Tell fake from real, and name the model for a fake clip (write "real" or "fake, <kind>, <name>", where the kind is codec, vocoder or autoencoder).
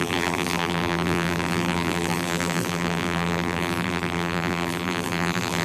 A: fake, vocoder, BigVGAN v2